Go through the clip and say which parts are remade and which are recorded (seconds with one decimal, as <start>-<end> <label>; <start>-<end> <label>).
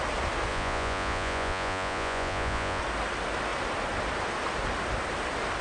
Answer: 0.0-0.5 recorded; 0.5-2.8 remade; 2.8-5.6 recorded